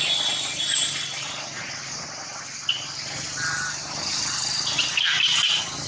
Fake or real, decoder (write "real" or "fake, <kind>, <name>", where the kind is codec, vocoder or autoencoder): real